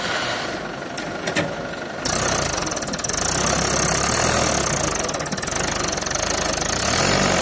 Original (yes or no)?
yes